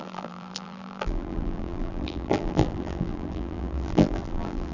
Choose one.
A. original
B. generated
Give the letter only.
B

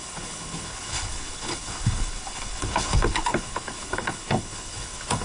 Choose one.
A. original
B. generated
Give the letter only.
B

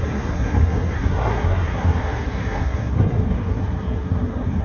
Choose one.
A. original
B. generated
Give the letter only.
B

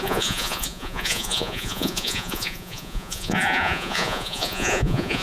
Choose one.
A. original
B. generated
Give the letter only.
B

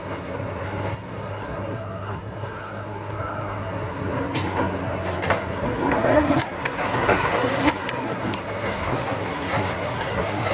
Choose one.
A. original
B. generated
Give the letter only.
B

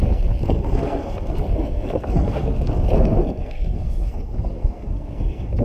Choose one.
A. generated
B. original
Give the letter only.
A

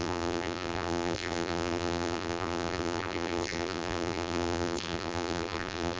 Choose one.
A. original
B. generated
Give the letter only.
B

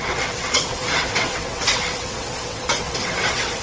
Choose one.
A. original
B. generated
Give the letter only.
B